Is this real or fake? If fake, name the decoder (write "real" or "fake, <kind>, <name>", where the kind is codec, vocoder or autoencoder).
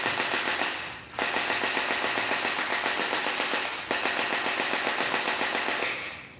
real